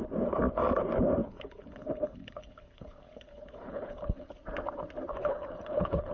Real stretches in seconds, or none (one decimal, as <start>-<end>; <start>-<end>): 0.0-1.2; 4.4-5.1